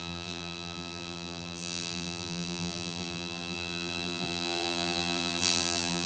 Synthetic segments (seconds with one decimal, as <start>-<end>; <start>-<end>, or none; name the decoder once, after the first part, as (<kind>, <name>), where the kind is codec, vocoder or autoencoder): 0.0-6.1 (vocoder, BigVGAN v2)